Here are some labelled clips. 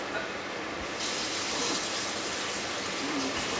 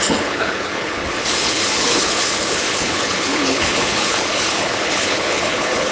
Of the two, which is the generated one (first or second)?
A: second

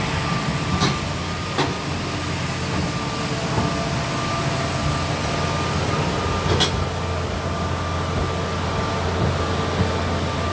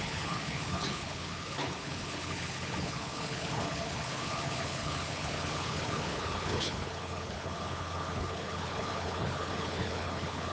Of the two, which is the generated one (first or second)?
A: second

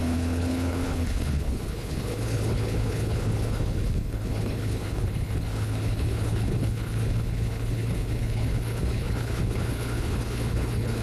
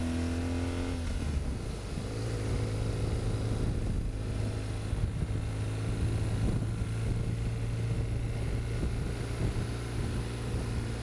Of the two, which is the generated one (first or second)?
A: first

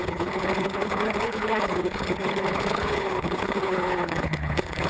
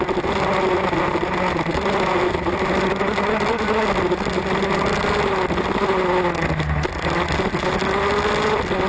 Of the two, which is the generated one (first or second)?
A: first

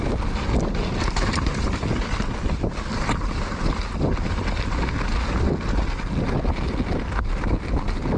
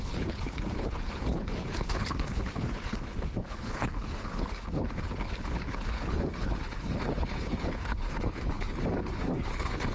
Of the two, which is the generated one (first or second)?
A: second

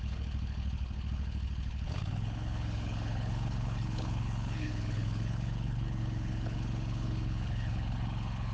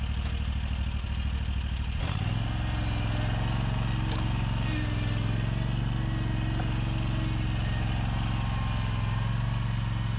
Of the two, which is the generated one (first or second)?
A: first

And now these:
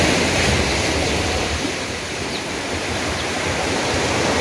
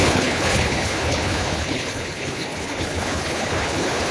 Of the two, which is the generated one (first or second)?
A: second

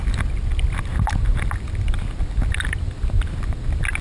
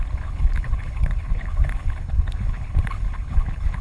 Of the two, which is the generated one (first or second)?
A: second